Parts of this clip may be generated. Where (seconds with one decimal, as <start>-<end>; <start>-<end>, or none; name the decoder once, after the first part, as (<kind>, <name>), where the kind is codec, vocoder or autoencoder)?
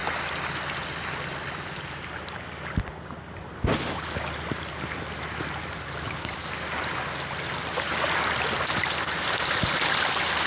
none